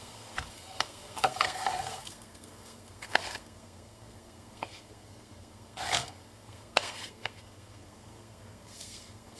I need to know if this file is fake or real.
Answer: fake